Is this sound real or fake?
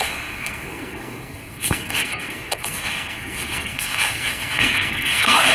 fake